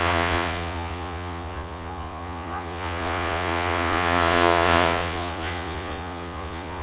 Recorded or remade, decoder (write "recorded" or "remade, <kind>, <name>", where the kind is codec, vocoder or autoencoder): remade, vocoder, Vocos